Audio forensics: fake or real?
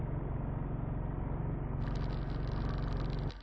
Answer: real